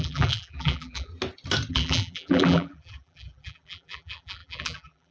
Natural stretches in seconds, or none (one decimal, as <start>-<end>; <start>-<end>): 1.1-1.7